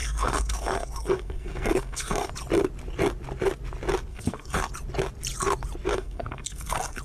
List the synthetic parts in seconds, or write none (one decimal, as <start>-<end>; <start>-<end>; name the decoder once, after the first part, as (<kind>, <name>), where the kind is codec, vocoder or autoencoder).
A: 0.0-2.3 (codec, SNAC); 4.1-4.7; 5.9-7.0